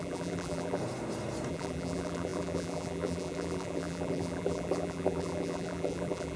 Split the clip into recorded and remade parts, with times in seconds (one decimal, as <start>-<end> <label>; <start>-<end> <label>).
0.0-0.8 remade; 0.8-1.5 recorded; 1.5-6.4 remade